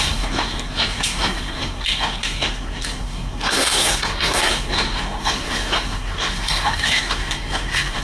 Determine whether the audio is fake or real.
fake